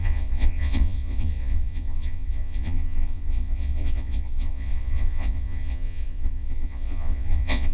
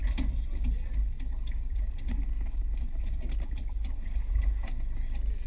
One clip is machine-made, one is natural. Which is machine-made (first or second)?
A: first